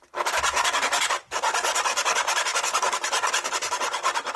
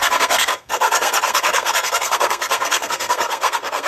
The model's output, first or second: second